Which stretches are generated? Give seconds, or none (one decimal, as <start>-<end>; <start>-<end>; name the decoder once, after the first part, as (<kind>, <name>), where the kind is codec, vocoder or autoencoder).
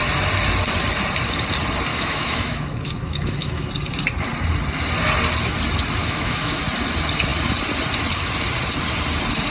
1.9-3.7 (autoencoder, DAC-VAE); 6.0-6.6